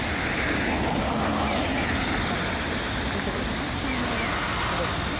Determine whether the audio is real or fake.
real